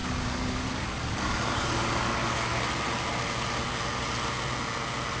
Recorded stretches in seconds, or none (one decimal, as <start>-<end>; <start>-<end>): 2.7-5.2